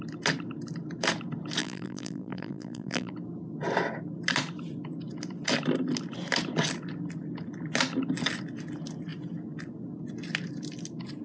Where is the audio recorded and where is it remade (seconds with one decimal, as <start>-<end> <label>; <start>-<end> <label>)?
0.0-1.6 recorded; 1.6-3.1 remade; 3.1-11.2 recorded